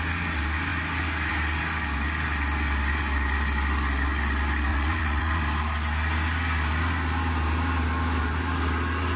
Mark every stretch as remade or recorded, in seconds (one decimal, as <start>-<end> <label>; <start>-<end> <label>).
0.0-4.7 recorded; 4.7-5.4 remade; 5.4-9.2 recorded